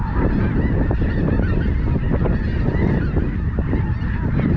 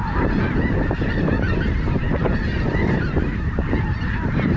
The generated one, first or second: second